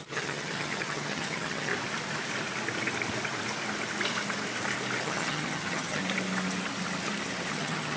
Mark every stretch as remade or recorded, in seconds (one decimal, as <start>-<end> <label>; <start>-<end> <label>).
0.0-1.7 remade; 1.7-5.0 recorded; 5.0-6.0 remade; 6.0-7.5 recorded; 7.5-8.0 remade